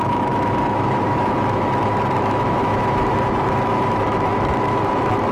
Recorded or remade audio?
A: remade